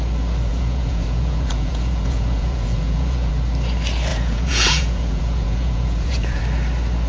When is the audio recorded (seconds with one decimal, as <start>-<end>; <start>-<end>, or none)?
0.0-0.5; 3.3-4.1; 6.4-7.1